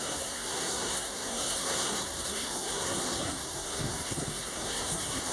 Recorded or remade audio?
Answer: remade